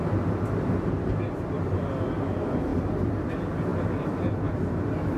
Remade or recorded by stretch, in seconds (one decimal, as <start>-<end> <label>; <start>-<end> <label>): 0.0-2.7 recorded; 2.7-3.3 remade; 3.3-5.2 recorded